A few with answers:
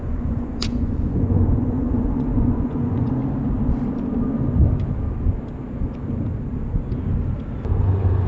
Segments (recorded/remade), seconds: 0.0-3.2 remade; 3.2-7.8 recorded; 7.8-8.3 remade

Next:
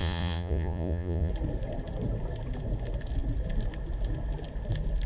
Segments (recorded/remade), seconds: 0.0-1.3 remade; 1.3-5.1 recorded

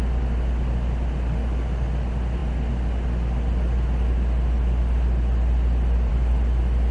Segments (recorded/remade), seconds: 0.0-6.9 recorded

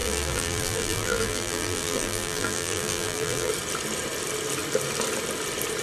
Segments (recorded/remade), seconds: 0.0-3.5 remade; 3.5-5.8 recorded

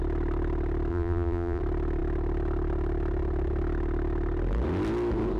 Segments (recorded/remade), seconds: 0.0-0.9 recorded; 0.9-1.6 remade; 1.6-5.4 recorded

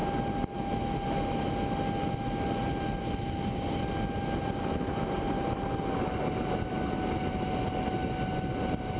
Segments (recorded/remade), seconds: 0.0-9.0 recorded

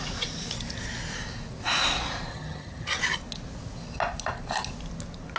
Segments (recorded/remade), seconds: 0.0-2.3 recorded; 2.3-3.0 remade; 3.0-5.4 recorded

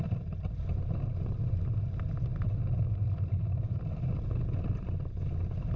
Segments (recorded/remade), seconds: 0.0-5.8 recorded